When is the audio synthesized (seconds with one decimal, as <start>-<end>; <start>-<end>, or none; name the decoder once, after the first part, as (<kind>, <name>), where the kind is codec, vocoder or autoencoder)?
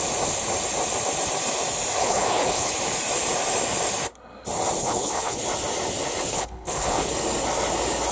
2.0-2.7 (codec, HILCodec); 4.8-5.4; 6.3-7.1